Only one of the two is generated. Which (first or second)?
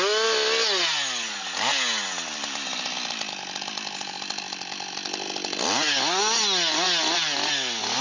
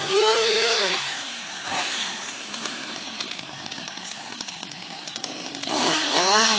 second